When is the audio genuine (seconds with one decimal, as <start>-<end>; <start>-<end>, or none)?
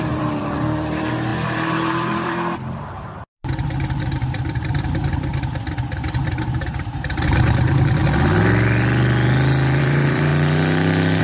5.3-6.4; 8.0-9.8; 10.3-11.2